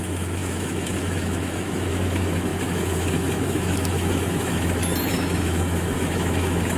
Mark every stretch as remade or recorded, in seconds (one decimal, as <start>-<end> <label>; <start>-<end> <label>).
0.0-6.8 remade